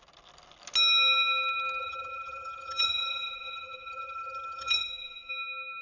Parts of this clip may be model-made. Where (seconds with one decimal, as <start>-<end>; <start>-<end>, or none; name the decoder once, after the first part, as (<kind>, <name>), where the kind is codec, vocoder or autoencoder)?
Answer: 1.8-5.3 (vocoder, HiFi-GAN)